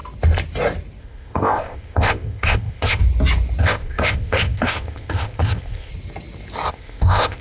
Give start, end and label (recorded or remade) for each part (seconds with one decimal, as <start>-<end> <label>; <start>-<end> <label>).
0.0-1.0 recorded; 1.0-3.0 remade; 3.0-3.6 recorded; 3.6-5.9 remade; 5.9-6.7 recorded; 6.7-7.4 remade